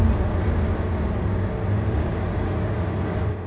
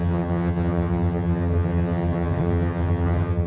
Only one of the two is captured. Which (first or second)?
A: first